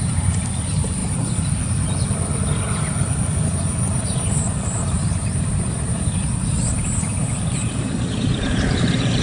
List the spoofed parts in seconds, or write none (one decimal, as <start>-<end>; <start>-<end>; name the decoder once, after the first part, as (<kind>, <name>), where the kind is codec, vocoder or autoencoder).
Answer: 0.0-1.0 (vocoder, BigVGAN v2); 3.5-9.2

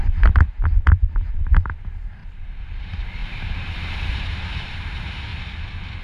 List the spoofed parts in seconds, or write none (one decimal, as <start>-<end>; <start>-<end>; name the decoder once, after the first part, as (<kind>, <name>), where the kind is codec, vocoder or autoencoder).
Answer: 0.0-2.2 (vocoder, BigVGAN v2); 2.8-5.3